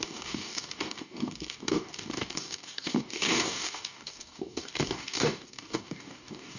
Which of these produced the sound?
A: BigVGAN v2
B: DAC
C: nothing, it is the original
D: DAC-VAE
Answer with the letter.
B